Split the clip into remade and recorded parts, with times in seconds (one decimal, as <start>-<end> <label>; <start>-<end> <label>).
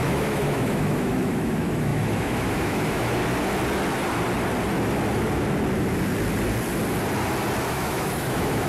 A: 0.0-3.2 remade; 3.2-7.7 recorded; 7.7-8.7 remade